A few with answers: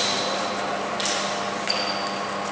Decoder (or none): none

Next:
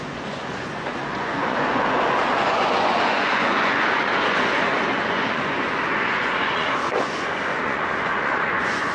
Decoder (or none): vocoder, Vocos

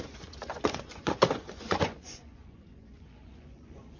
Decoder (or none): vocoder, Vocos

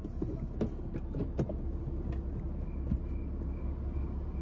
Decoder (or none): none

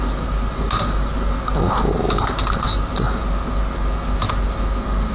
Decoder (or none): none